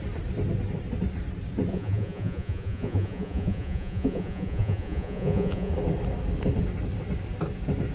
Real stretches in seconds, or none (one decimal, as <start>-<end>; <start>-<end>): 0.0-1.7; 5.7-7.9